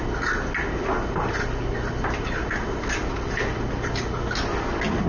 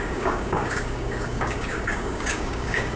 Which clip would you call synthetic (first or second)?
second